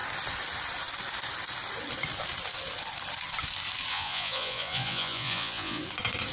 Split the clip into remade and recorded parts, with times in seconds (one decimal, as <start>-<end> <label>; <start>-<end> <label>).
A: 0.0-3.9 recorded; 3.9-5.8 remade; 5.8-6.3 recorded